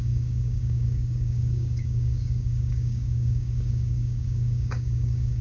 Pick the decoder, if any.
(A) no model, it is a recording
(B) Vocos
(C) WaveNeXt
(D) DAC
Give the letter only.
D